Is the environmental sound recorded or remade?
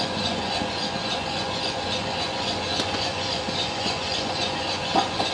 remade